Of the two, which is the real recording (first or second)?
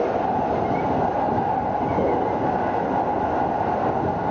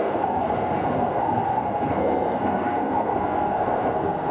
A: first